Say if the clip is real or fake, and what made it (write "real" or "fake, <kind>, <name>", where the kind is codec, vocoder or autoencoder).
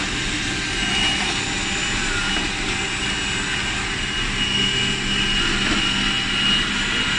real